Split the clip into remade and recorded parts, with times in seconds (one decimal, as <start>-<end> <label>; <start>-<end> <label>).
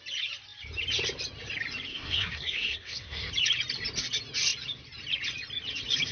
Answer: 0.0-1.9 recorded; 1.9-3.3 remade; 3.3-6.1 recorded